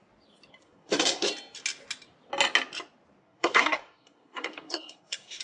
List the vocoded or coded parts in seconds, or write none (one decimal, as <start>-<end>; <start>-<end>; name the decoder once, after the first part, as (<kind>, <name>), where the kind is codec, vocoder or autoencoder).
0.6-1.3 (codec, SNAC); 3.2-5.4

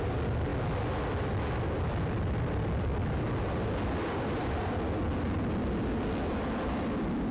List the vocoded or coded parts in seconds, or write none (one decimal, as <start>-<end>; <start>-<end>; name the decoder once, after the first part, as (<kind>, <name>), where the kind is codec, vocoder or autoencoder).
none